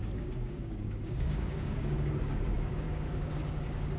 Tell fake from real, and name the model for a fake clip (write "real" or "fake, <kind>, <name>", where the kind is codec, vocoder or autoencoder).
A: fake, codec, DAC